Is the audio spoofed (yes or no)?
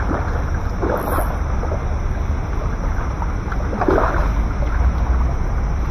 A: no